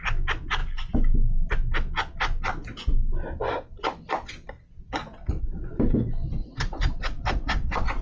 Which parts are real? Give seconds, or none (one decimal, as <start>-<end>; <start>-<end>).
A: 0.0-6.4